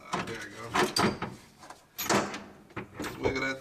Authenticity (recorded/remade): recorded